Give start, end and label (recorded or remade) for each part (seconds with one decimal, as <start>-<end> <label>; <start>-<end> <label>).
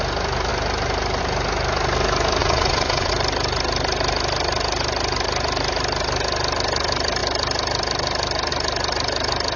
0.0-2.4 recorded; 2.4-3.1 remade; 3.1-9.6 recorded